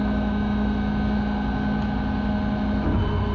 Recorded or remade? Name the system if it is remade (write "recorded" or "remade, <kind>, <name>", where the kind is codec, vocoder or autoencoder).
recorded